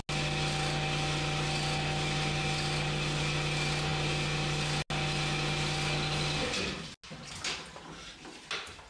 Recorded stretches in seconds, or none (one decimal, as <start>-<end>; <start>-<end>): 0.0-8.9

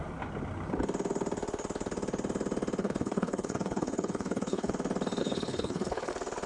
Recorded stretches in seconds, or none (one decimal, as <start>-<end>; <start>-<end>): 0.0-2.8; 4.7-5.2; 6.1-6.5

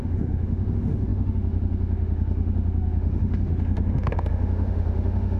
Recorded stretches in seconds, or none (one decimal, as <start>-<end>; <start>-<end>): none